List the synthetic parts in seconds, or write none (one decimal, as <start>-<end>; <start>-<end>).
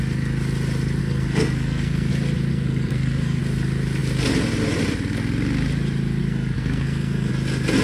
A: 1.0-2.1; 2.5-3.4; 6.2-7.3